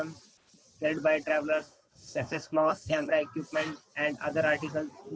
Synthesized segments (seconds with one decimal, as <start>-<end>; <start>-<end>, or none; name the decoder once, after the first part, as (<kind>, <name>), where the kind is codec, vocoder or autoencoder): 1.6-3.1 (codec, SNAC)